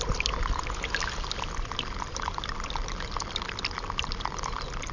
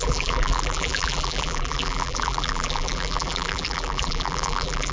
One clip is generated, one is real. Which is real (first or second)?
first